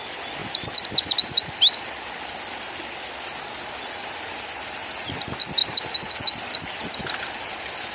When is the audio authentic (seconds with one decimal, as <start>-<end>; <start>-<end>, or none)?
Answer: 0.0-7.9